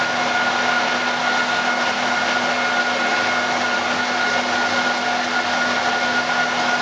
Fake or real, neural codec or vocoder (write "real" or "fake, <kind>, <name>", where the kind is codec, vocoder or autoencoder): real